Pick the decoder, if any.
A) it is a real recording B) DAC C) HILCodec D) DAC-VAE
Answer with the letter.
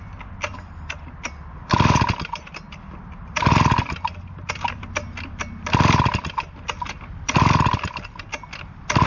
A